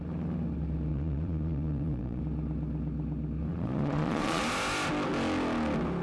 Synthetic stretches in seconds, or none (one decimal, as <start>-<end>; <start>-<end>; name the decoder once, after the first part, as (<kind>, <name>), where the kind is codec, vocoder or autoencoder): 0.9-2.2 (vocoder, Vocos); 3.5-4.4